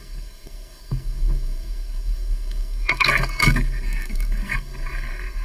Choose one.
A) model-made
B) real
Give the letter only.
A